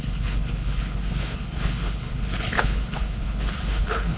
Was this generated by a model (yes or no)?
yes